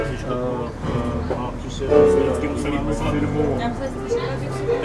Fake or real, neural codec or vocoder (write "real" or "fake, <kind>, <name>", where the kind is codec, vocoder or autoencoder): real